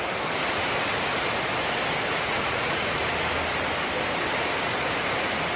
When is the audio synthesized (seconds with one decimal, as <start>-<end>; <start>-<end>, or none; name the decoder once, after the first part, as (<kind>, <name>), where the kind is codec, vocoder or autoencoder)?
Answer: 2.1-3.0 (vocoder, Vocos)